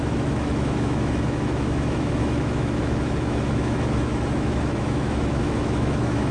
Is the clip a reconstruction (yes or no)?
yes